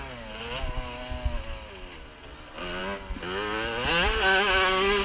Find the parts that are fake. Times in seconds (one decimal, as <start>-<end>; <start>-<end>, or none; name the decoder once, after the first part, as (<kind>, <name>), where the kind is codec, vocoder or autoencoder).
none